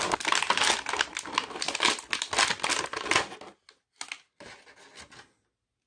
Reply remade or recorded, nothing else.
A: recorded